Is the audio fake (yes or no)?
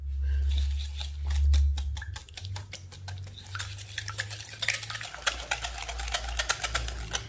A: no